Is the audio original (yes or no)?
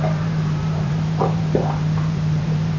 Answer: no